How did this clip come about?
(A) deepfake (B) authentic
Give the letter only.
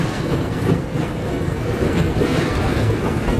A